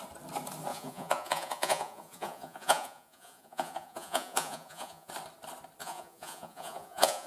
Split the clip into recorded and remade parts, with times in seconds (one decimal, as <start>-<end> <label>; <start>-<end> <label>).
0.0-0.7 recorded; 0.7-5.1 remade; 5.1-5.8 recorded; 5.8-7.3 remade